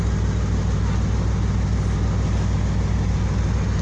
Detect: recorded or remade recorded